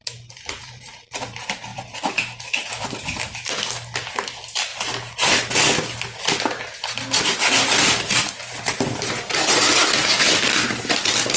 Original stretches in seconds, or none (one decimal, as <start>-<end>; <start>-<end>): 4.7-7.8